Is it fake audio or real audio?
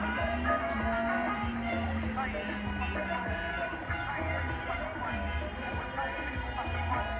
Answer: real